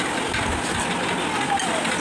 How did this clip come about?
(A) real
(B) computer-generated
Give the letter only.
A